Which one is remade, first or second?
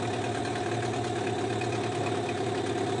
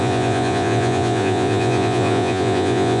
second